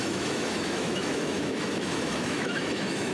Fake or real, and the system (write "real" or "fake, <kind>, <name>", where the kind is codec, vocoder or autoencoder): fake, autoencoder, DAC-VAE